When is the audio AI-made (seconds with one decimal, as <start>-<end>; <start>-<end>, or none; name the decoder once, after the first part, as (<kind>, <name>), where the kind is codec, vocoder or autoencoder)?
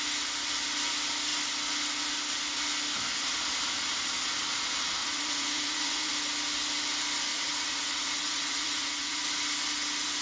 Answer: 5.0-6.1 (vocoder, Vocos); 7.3-9.2